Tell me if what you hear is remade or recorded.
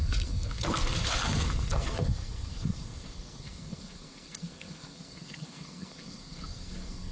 remade